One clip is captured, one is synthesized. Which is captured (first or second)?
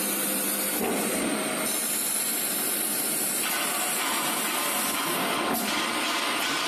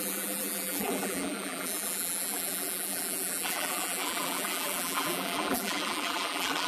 first